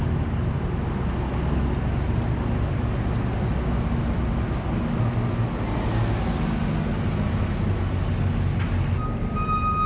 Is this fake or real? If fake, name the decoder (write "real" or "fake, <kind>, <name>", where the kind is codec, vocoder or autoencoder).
real